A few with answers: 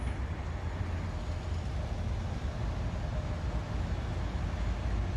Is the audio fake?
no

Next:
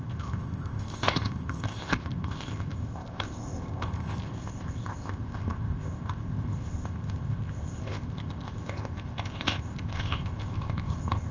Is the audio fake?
yes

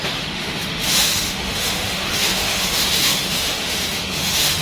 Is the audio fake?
yes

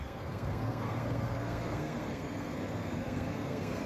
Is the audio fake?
yes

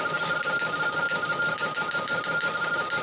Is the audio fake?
no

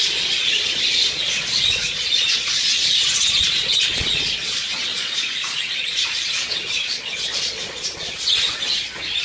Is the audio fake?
yes